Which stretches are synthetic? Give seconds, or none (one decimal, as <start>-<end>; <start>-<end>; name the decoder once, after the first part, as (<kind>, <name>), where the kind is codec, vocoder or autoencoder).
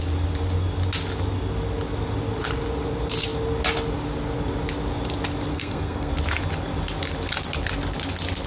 5.5-6.1 (codec, SNAC)